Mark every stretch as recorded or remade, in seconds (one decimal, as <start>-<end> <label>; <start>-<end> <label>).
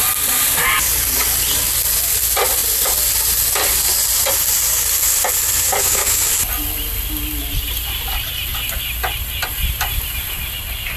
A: 0.0-5.8 recorded; 5.8-6.3 remade; 6.3-11.0 recorded